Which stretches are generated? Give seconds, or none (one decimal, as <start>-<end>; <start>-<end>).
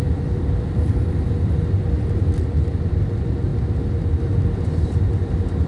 0.0-5.7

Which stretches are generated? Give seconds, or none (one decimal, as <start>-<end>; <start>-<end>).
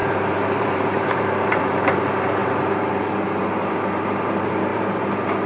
0.0-5.5